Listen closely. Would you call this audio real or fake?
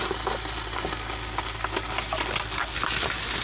real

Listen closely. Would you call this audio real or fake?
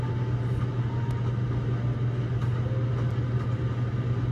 real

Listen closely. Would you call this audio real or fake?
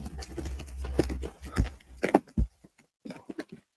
real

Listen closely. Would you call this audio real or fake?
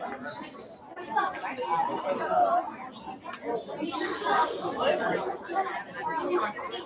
real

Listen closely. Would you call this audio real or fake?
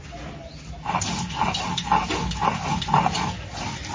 real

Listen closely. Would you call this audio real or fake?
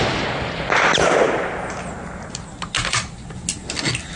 real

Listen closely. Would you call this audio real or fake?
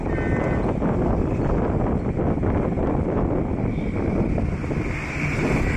real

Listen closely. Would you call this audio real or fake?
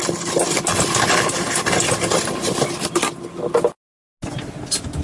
real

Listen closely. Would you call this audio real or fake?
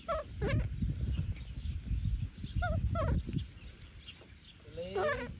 real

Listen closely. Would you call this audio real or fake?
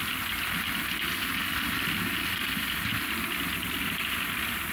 real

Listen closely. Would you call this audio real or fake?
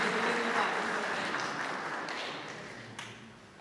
real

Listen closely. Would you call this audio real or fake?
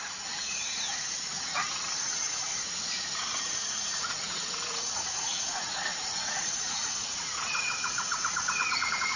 fake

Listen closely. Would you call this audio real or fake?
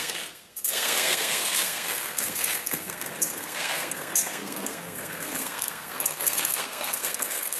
fake